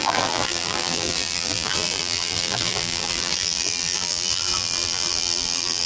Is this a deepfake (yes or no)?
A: yes